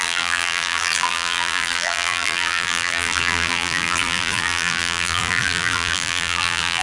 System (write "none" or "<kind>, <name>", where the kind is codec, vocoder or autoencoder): vocoder, BigVGAN v2